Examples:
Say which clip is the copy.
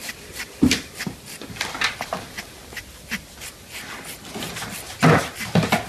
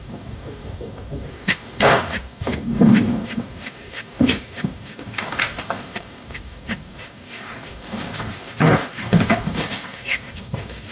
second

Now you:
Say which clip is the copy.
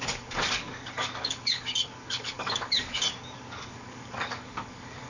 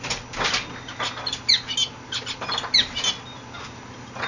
first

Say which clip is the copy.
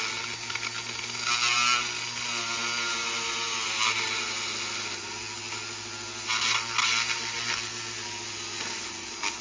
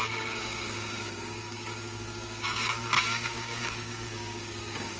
second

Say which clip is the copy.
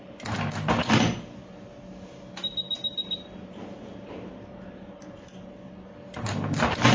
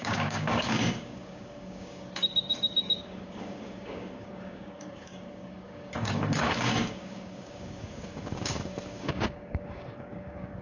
second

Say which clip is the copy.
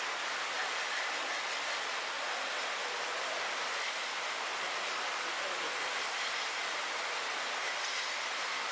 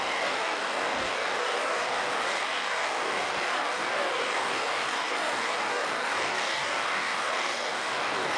second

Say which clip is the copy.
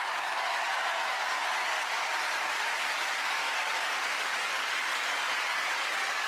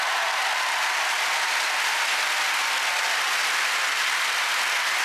first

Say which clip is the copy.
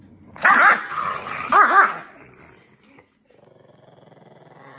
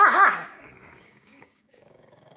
second